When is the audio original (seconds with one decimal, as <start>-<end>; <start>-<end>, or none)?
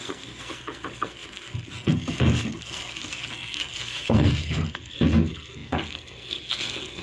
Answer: none